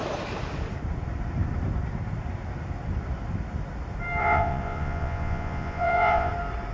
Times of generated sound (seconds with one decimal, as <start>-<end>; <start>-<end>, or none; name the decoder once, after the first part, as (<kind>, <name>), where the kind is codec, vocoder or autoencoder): 4.2-6.3 (vocoder, Vocos)